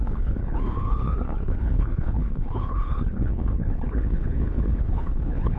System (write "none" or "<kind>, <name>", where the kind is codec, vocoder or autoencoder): codec, HILCodec